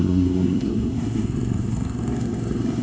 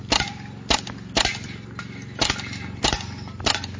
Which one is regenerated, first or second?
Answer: first